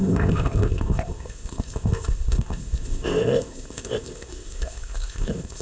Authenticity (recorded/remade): remade